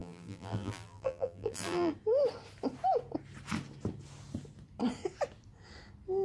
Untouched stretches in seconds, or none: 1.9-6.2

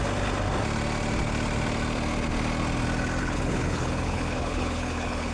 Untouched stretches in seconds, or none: 0.0-3.2

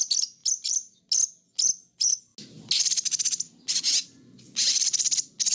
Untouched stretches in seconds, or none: 0.0-0.4; 1.0-5.5

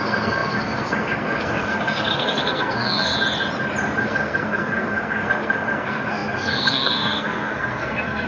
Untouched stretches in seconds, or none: 3.1-4.0

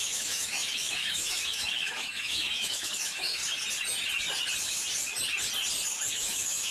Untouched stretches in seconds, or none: 3.4-6.1